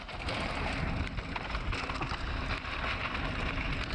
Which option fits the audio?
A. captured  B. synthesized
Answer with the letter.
A